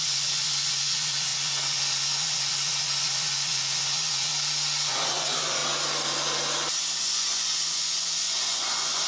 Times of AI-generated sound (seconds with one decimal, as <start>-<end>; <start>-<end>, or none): 0.0-4.3; 4.9-5.6; 7.0-9.1